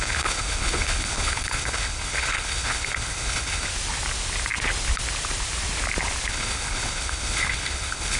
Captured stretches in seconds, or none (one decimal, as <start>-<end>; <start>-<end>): 3.7-6.3